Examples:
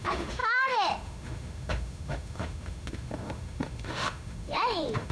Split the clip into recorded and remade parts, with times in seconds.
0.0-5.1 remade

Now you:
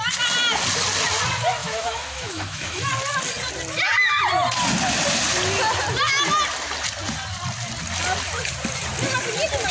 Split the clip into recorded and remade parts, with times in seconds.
0.0-1.6 recorded; 1.6-2.9 remade; 2.9-9.7 recorded

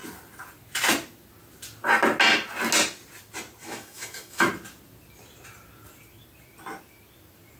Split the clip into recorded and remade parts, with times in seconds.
0.0-3.6 recorded; 3.6-4.5 remade; 4.5-7.6 recorded

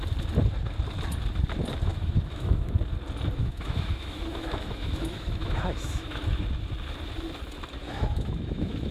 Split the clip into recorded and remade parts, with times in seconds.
0.0-1.9 recorded; 1.9-2.7 remade; 2.7-3.4 recorded; 3.4-6.2 remade; 6.2-7.8 recorded; 7.8-8.9 remade

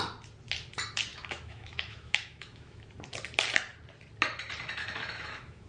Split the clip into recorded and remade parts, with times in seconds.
0.0-1.1 recorded; 1.1-2.9 remade; 2.9-4.8 recorded; 4.8-5.7 remade